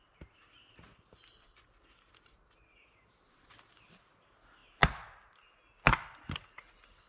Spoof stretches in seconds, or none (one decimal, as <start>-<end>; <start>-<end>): none